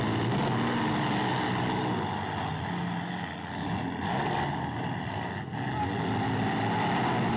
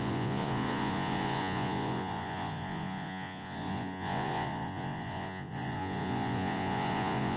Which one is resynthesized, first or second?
second